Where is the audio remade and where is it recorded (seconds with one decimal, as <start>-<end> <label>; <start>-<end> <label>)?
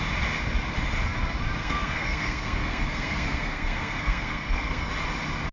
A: 0.0-1.6 recorded; 1.6-4.9 remade; 4.9-5.5 recorded